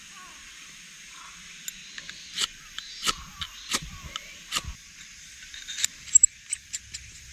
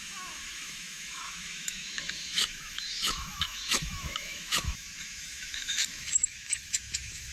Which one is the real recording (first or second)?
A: first